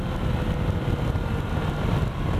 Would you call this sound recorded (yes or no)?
yes